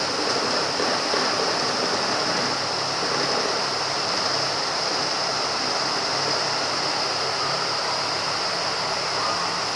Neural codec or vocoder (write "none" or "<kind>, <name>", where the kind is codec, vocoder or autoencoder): none